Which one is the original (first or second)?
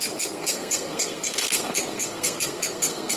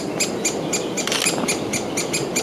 second